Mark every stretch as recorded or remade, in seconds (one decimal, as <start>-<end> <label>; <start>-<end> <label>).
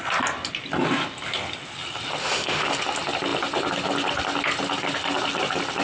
0.0-2.2 recorded; 2.2-2.7 remade; 2.7-5.8 recorded